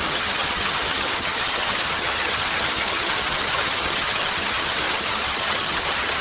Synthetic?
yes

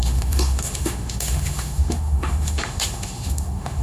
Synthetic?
yes